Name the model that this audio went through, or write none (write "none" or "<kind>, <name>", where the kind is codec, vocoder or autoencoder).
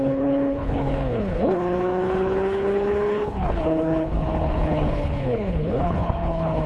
codec, HILCodec